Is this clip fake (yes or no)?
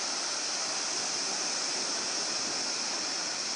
no